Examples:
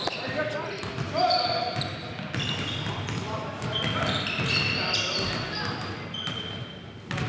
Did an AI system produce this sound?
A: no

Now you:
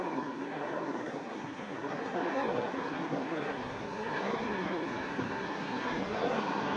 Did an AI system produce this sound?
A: yes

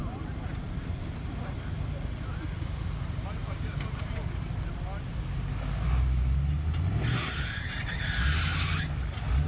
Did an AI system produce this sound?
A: no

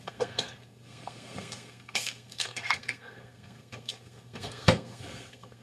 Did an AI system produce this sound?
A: yes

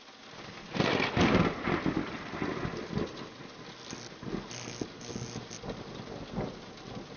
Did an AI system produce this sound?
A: no